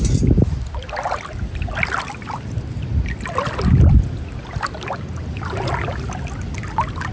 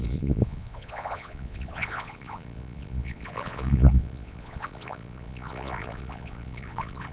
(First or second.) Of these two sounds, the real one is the first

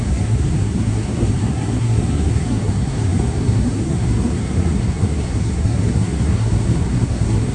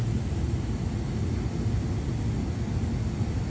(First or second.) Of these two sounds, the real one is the second